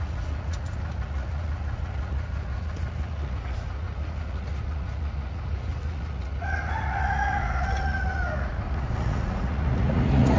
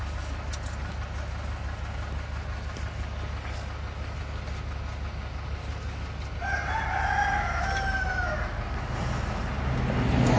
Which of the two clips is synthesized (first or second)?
first